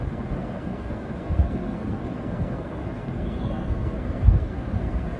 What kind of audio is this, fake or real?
fake